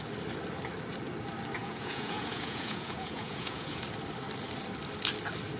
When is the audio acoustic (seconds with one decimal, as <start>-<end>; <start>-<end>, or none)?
0.0-1.6; 3.8-5.6